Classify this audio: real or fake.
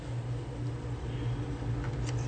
real